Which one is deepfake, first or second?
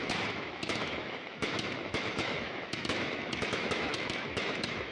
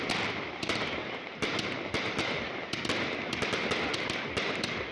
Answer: first